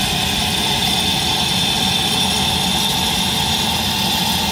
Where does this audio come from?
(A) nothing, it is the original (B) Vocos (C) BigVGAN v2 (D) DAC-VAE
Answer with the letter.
A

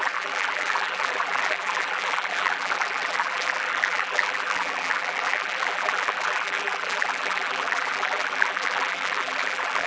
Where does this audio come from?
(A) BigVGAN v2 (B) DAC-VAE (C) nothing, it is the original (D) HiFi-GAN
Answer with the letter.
A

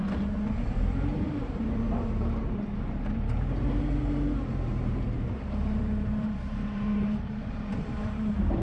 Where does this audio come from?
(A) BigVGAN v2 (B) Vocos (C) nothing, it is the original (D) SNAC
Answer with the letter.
A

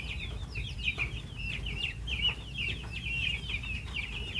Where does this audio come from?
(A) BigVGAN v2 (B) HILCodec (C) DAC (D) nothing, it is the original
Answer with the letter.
A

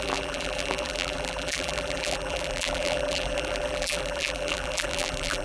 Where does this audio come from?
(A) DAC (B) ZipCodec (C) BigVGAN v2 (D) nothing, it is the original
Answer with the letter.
C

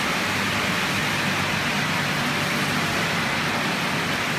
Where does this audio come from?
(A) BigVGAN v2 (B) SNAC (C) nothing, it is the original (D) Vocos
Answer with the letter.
C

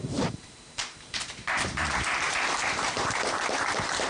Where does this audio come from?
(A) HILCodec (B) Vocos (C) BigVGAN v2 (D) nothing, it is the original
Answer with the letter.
C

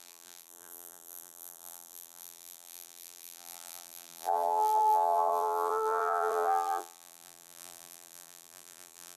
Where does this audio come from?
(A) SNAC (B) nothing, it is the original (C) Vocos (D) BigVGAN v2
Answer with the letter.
D